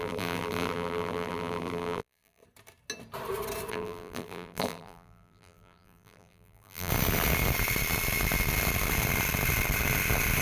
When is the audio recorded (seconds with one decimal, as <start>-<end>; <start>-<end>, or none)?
2.4-3.7; 6.9-10.4